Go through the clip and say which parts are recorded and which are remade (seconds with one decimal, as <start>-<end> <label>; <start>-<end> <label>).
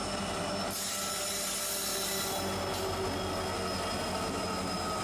0.0-0.5 remade; 0.5-5.0 recorded